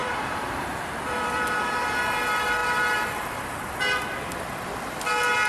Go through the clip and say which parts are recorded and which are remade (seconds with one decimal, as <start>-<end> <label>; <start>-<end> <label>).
0.0-1.5 remade; 1.5-5.5 recorded